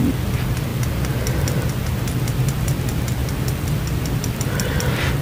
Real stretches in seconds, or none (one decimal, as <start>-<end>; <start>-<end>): 0.0-5.2